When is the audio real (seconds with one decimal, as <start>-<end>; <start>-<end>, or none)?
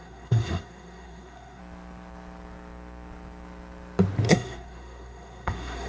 1.6-4.3